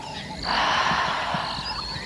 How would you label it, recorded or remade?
recorded